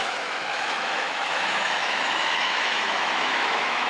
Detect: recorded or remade remade